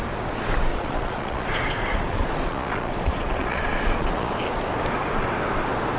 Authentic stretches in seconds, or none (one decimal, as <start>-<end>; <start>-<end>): 0.0-0.7; 4.3-6.0